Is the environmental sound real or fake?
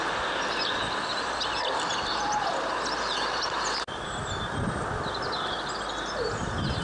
real